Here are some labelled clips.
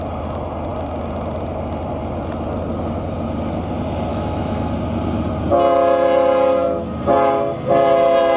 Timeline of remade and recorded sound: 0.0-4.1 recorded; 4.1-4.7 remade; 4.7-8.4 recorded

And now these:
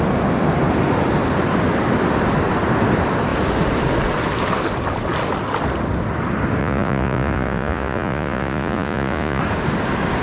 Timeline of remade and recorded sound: 0.0-6.6 recorded; 6.6-9.4 remade; 9.4-10.2 recorded